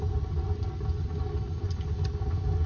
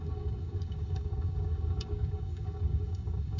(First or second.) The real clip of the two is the first